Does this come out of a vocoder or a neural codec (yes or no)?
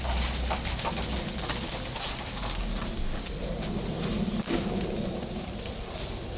no